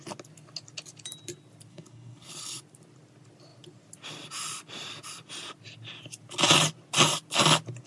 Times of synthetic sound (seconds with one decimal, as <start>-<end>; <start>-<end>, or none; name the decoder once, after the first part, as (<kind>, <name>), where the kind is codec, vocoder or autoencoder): 1.7-2.6 (codec, HILCodec)